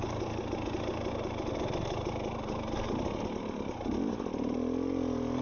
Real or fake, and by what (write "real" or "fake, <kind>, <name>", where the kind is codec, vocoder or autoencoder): real